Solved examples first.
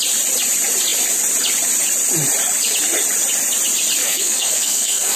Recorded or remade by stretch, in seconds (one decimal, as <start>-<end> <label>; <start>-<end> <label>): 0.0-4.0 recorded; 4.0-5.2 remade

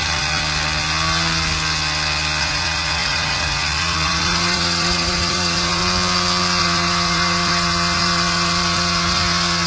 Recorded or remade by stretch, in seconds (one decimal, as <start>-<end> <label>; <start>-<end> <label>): 0.0-0.4 remade; 0.4-2.4 recorded; 2.4-5.8 remade; 5.8-6.6 recorded; 6.6-9.7 remade

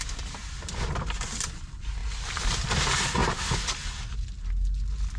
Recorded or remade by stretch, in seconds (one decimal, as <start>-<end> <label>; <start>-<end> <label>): 0.0-5.2 recorded

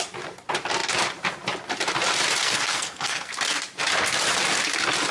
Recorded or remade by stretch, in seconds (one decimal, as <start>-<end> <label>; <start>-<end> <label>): 0.0-2.4 recorded; 2.4-3.3 remade; 3.3-5.1 recorded

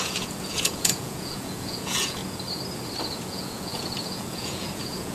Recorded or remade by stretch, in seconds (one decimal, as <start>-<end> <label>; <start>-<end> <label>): 0.0-2.2 remade; 2.2-3.2 recorded; 3.2-5.1 remade

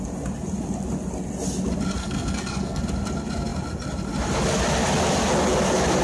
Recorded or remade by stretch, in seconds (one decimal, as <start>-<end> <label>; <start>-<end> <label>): 0.0-2.0 recorded; 2.0-2.8 remade; 2.8-6.0 recorded

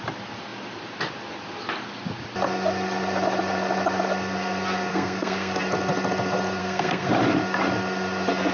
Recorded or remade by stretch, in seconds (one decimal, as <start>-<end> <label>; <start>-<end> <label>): 0.0-4.9 recorded; 4.9-5.6 remade; 5.6-6.6 recorded; 6.6-7.1 remade; 7.1-8.5 recorded

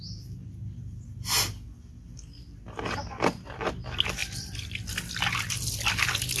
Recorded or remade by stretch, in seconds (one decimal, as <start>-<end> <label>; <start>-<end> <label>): 0.0-6.4 recorded